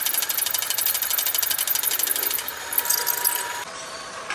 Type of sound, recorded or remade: recorded